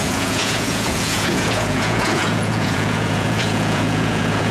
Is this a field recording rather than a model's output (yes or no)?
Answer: no